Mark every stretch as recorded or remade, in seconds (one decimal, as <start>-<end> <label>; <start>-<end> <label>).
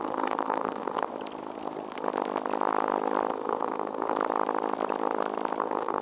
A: 0.0-1.1 remade; 1.1-3.3 recorded; 3.3-4.2 remade; 4.2-5.6 recorded; 5.6-6.0 remade